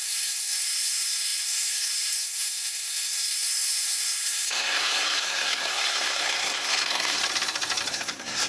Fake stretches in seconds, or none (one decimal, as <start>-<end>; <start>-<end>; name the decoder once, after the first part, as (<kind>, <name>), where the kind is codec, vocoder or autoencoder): 0.0-7.2 (codec, SNAC); 7.9-8.5